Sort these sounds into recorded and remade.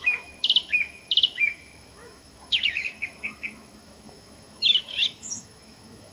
remade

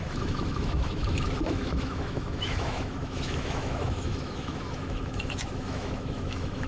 remade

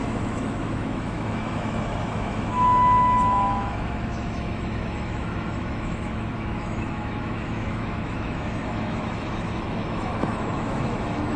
remade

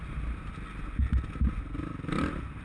recorded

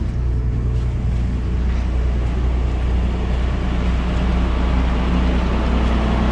recorded